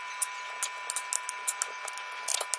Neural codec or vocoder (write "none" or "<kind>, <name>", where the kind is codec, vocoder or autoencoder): none